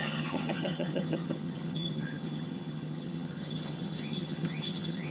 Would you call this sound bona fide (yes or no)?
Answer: no